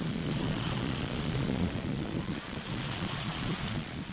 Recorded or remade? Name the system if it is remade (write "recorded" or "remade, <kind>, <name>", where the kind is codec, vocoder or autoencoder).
remade, vocoder, Vocos